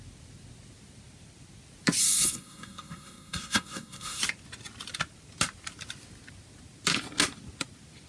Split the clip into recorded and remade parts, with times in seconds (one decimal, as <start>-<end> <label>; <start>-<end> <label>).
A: 0.0-2.0 recorded; 2.0-4.2 remade; 4.2-8.1 recorded